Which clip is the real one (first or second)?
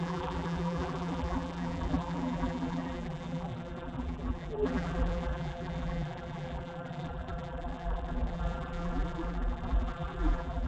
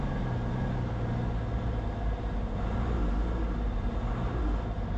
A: second